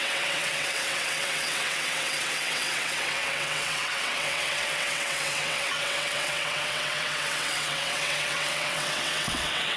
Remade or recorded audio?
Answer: remade